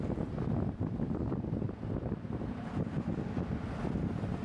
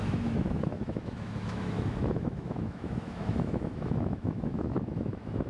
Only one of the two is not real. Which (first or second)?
second